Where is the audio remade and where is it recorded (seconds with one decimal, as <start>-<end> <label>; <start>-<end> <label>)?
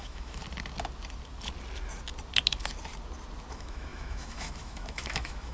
0.0-0.4 remade; 0.4-3.5 recorded; 3.5-5.5 remade